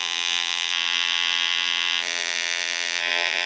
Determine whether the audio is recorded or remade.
remade